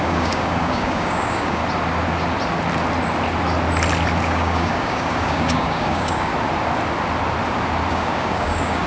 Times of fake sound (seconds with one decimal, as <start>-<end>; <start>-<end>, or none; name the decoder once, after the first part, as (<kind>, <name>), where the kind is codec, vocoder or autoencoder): 0.0-1.6 (codec, DAC); 4.2-6.3; 7.9-8.9